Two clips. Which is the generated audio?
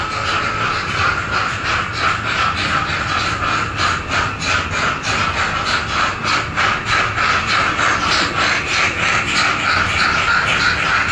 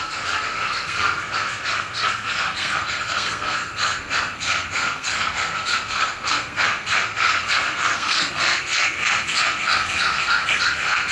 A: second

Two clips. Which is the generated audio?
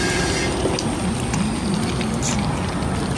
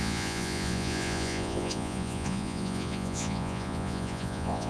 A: second